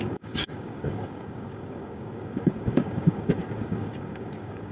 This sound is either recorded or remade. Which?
remade